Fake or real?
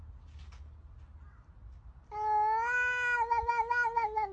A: real